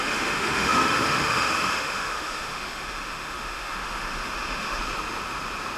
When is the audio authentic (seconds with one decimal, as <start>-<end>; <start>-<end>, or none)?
4.8-5.8